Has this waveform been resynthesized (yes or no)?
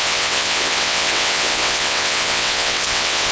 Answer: yes